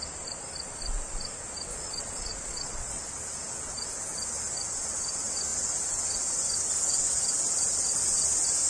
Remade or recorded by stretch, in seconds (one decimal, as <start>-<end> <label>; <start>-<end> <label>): 0.0-1.7 recorded; 1.7-3.0 remade; 3.0-8.7 recorded

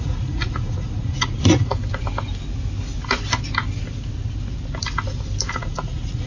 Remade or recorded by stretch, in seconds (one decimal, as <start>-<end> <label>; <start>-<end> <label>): 0.0-1.7 remade; 1.7-5.5 recorded; 5.5-6.3 remade

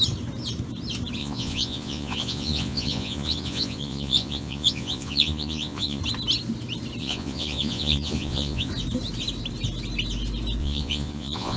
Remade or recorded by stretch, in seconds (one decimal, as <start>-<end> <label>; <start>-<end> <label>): 0.0-1.2 recorded; 1.2-6.0 remade; 6.0-7.0 recorded; 7.0-8.7 remade; 8.7-10.6 recorded; 10.6-11.6 remade

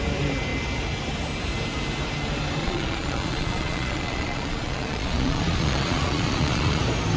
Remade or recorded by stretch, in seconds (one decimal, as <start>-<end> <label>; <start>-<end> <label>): 0.0-2.6 recorded; 2.6-6.8 remade; 6.8-7.2 recorded

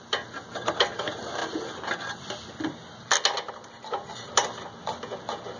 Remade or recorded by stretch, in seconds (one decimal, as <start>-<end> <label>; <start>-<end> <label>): 0.0-5.6 recorded

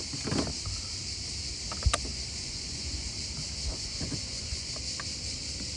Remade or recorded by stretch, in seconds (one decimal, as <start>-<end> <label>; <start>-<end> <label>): 0.0-2.1 recorded; 2.1-3.1 remade; 3.1-3.7 recorded; 3.7-4.7 remade; 4.7-5.8 recorded

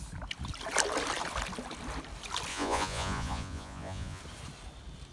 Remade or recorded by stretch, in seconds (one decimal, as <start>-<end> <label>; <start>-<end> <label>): 0.0-2.5 recorded; 2.5-4.2 remade; 4.2-5.1 recorded